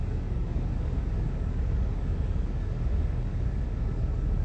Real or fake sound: fake